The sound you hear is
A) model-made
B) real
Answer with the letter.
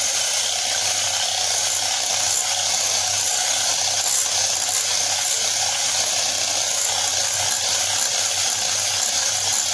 B